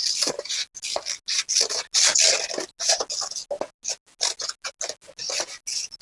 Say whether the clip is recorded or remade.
recorded